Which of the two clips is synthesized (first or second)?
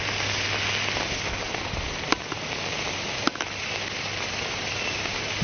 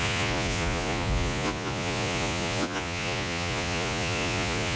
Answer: second